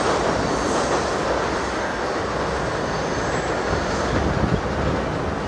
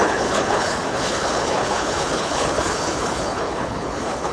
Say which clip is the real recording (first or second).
first